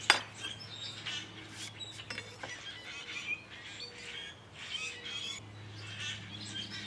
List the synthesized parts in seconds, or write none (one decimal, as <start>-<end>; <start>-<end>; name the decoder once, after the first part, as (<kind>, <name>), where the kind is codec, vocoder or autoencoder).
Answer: none